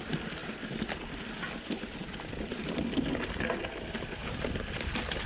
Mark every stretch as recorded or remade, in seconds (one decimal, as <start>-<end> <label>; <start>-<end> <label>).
0.0-0.4 recorded; 0.4-3.1 remade; 3.1-4.2 recorded; 4.2-4.8 remade; 4.8-5.3 recorded